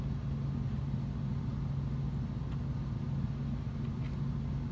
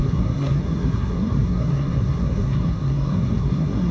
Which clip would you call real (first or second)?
first